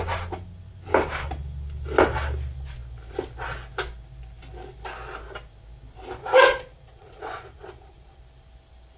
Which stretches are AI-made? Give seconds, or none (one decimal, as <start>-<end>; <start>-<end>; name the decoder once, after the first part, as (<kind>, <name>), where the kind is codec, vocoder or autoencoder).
6.2-8.2 (vocoder, Vocos)